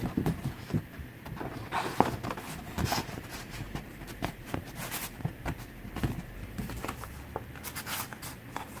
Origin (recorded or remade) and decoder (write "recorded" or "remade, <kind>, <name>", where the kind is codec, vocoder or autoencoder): remade, vocoder, BigVGAN v2